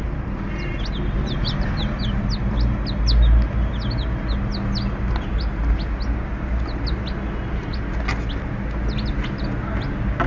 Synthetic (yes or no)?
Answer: no